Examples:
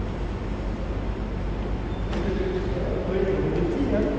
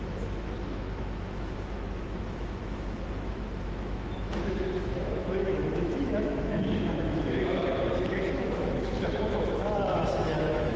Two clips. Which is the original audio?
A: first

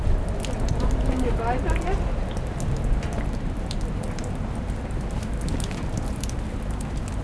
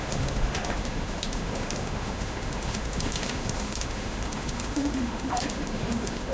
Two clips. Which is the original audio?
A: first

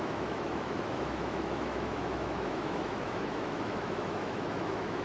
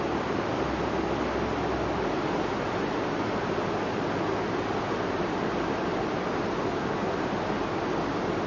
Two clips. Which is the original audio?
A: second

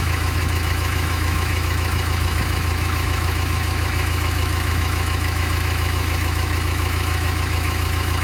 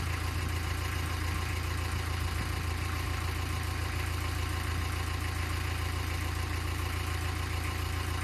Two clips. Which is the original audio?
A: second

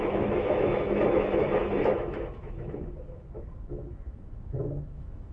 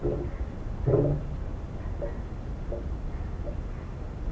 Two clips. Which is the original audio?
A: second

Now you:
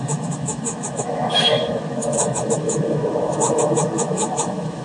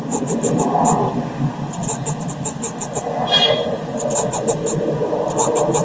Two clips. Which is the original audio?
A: second